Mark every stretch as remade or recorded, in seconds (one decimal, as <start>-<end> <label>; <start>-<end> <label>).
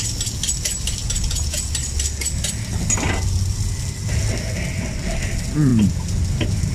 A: 0.0-1.0 recorded; 1.0-1.7 remade; 1.7-6.7 recorded